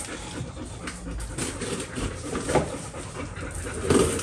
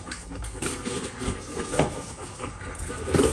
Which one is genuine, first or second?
first